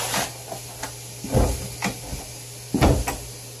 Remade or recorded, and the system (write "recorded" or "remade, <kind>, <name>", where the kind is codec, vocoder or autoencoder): recorded